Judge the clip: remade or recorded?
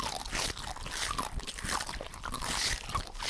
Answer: recorded